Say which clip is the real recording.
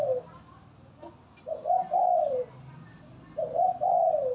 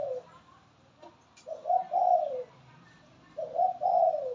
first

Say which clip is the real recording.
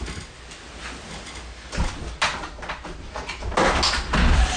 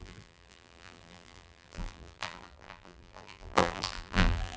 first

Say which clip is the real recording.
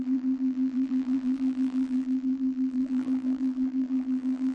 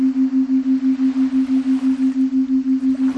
second